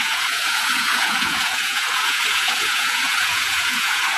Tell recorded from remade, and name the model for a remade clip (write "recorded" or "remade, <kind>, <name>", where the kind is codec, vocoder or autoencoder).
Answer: remade, vocoder, Vocos